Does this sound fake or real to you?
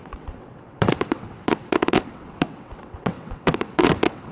fake